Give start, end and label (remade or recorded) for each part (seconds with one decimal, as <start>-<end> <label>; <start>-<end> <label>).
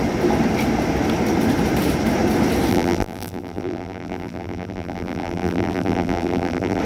0.0-2.7 recorded; 2.7-6.8 remade